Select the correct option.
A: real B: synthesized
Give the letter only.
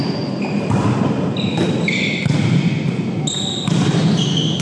A